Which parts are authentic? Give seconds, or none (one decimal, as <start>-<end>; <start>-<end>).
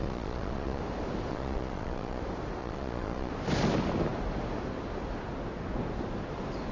0.8-1.3; 2.2-2.6; 3.3-6.7